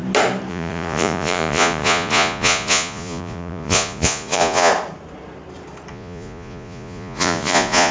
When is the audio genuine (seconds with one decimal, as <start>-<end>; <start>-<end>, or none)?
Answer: 0.0-0.5; 4.7-5.9